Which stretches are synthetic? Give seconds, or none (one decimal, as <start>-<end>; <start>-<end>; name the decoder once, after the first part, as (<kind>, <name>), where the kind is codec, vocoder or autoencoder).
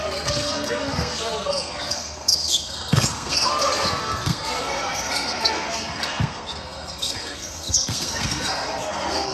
0.0-9.3 (codec, SNAC)